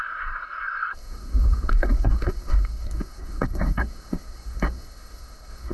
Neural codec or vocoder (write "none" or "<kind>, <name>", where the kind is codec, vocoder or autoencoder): codec, SNAC